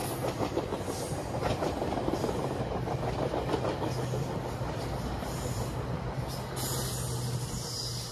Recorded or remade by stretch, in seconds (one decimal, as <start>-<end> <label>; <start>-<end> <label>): 0.0-1.0 remade; 1.0-1.5 recorded; 1.5-2.3 remade; 2.3-8.1 recorded